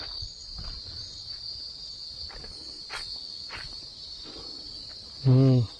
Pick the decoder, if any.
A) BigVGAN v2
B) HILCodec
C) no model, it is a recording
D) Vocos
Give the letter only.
C